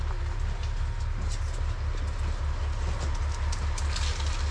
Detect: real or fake real